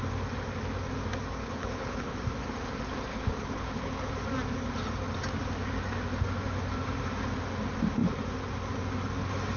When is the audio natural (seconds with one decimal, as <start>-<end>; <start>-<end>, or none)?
0.0-1.4; 2.1-3.1; 4.1-9.6